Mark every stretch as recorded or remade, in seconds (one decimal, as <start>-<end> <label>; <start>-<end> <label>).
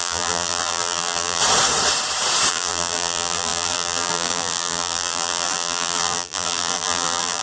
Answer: 0.0-1.4 remade; 1.4-2.5 recorded; 2.5-7.4 remade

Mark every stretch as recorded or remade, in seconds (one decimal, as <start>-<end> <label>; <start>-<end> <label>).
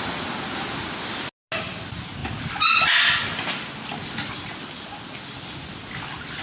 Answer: 0.0-6.4 recorded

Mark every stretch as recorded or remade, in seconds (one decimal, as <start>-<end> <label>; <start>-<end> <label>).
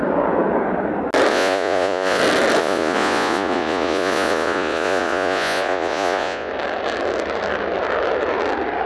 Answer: 0.0-1.3 recorded; 1.3-2.2 remade; 2.2-2.6 recorded; 2.6-6.5 remade; 6.5-8.9 recorded